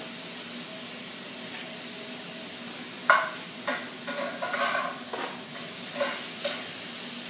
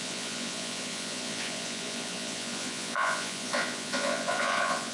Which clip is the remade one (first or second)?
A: second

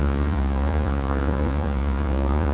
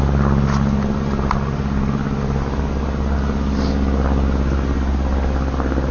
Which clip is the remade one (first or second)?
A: first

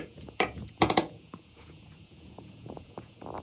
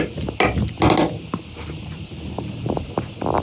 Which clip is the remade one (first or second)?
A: first